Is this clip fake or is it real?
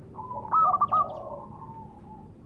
real